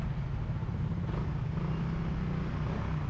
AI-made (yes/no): no